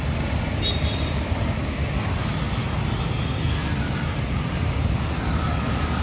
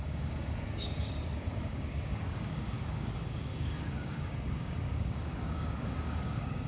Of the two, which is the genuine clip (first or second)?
first